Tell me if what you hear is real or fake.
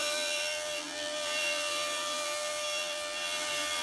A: fake